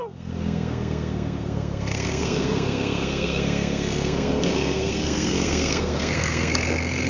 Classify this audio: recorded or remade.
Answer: remade